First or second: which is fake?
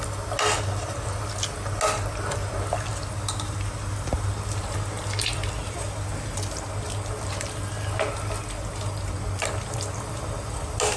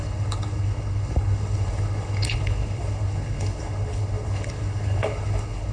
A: second